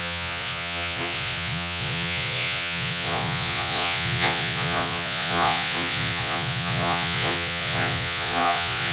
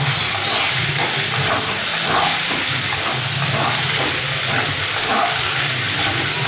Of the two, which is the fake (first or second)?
first